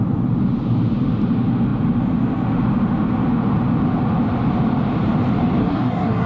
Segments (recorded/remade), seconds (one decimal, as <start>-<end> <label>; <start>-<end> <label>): 0.0-5.6 recorded; 5.6-6.3 remade